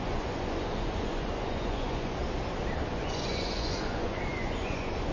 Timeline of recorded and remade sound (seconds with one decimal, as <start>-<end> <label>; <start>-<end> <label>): 0.0-2.2 remade; 2.2-2.9 recorded; 2.9-5.1 remade